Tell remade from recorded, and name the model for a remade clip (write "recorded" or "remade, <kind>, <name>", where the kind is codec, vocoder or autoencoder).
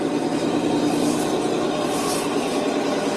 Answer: recorded